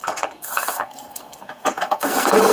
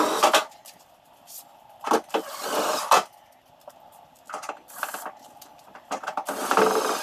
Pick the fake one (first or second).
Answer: first